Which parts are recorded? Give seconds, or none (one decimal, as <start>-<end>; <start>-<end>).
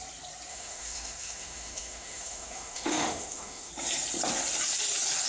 0.0-0.5; 3.7-5.3